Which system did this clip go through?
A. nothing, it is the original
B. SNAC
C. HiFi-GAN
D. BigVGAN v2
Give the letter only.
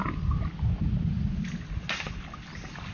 A